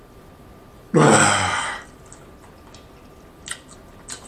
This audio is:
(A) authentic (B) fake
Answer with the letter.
A